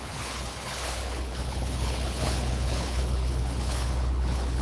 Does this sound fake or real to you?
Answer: fake